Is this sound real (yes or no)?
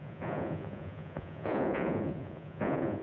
no